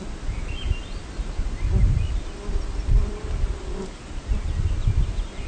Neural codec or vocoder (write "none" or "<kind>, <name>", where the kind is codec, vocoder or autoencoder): none